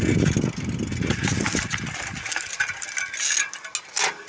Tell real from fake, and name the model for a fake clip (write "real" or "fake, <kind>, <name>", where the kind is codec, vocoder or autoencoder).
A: real